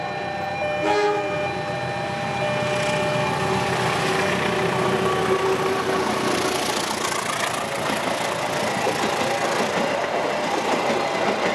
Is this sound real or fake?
real